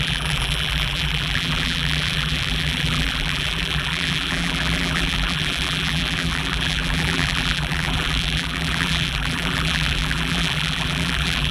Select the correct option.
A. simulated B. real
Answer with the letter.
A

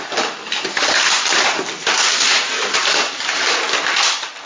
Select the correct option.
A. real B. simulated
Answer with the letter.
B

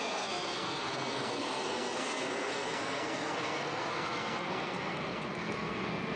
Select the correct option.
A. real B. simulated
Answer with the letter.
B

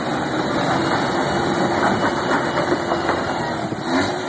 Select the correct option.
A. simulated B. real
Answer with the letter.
B